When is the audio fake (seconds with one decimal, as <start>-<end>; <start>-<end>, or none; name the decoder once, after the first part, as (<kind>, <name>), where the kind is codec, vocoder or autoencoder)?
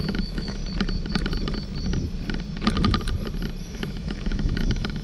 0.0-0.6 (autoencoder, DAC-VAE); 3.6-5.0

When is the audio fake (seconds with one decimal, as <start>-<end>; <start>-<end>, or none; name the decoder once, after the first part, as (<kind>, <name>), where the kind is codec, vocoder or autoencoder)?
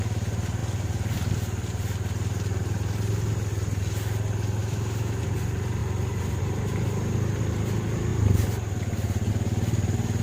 4.6-5.2 (autoencoder, DAC-VAE)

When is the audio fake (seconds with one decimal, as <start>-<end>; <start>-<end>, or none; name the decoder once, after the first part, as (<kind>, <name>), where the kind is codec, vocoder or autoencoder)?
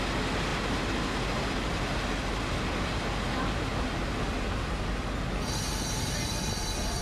none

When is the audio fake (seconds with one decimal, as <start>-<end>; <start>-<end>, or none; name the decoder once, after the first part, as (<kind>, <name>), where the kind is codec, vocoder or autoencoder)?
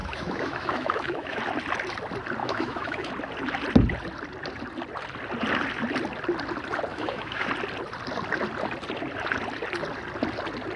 0.0-1.4 (autoencoder, DAC-VAE); 2.4-3.1; 6.9-7.5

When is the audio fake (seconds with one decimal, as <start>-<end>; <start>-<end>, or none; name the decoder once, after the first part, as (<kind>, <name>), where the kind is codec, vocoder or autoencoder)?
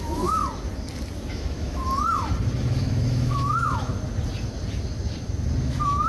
0.0-0.4 (autoencoder, DAC-VAE); 1.3-1.8; 2.6-3.9; 5.6-6.1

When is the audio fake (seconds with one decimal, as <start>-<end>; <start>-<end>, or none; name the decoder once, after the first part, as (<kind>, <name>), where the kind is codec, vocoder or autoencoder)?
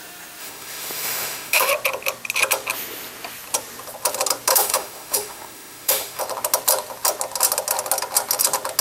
0.4-1.7 (autoencoder, DAC-VAE); 4.5-6.2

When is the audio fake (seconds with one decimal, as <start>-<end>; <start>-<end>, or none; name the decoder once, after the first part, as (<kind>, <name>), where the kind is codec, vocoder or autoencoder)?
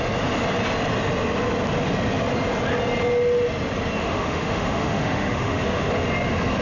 4.0-5.9 (autoencoder, DAC-VAE)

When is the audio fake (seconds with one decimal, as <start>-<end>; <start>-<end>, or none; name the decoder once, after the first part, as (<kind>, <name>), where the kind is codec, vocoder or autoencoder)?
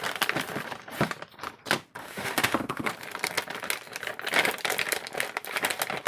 2.0-2.9 (autoencoder, DAC-VAE)